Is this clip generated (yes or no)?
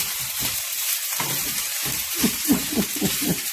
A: yes